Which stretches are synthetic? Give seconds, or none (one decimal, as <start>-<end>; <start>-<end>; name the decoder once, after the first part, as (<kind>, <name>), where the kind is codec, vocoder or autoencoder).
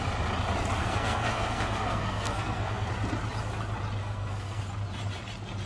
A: 0.8-2.9 (codec, SNAC); 4.0-4.6